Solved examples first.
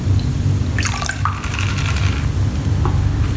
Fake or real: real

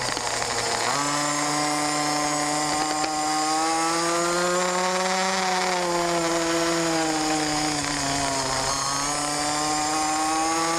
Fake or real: real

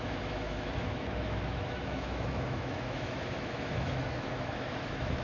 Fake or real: fake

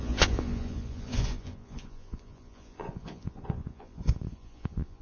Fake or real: fake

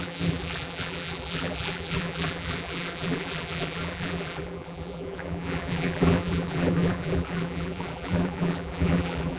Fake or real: fake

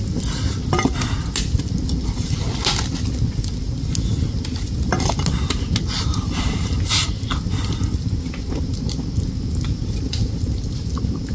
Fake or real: real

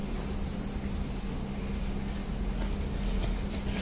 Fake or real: real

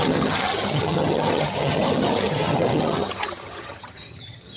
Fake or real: fake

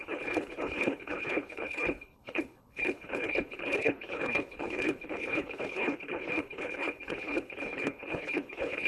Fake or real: fake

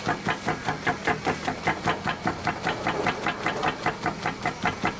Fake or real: real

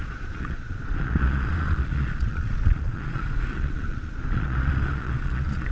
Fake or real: fake